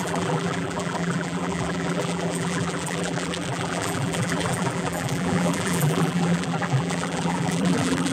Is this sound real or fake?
fake